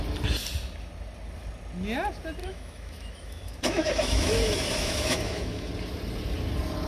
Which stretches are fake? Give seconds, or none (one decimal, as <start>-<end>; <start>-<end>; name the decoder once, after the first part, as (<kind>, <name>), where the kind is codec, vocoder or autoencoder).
2.4-5.7 (autoencoder, DAC-VAE)